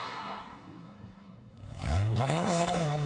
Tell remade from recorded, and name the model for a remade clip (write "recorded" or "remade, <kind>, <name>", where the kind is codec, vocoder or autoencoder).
remade, codec, SNAC